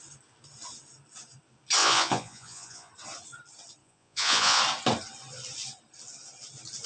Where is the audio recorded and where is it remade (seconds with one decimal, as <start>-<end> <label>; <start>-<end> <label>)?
0.0-1.8 recorded; 1.8-2.9 remade; 2.9-3.8 recorded; 3.8-4.6 remade; 4.6-6.9 recorded